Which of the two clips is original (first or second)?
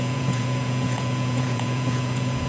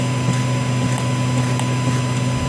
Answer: second